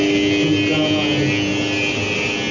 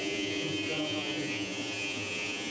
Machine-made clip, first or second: second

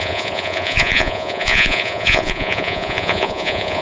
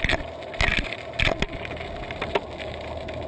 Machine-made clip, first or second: first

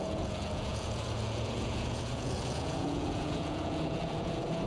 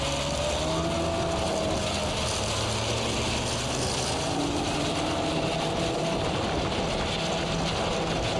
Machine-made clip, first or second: first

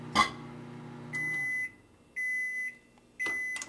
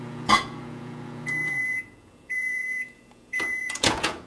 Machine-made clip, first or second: second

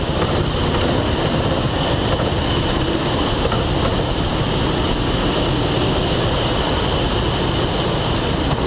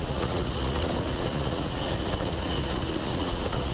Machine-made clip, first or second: second